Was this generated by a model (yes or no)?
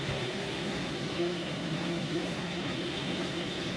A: yes